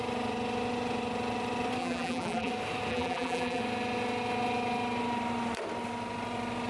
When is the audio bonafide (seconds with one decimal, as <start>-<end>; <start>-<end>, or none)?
0.0-1.8; 2.5-2.9; 3.6-6.7